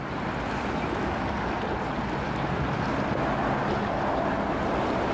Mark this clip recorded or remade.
recorded